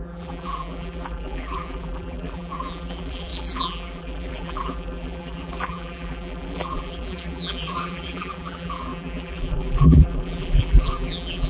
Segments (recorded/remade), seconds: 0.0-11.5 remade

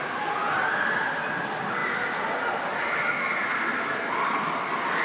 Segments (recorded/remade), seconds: 0.0-5.0 recorded

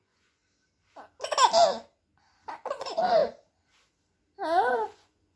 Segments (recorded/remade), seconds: 0.0-0.4 remade; 0.4-2.5 recorded; 2.5-3.2 remade; 3.2-4.7 recorded; 4.7-5.4 remade

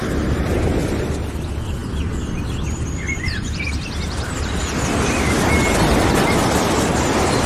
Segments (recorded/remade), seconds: 0.0-1.8 recorded; 1.8-4.8 remade; 4.8-7.5 recorded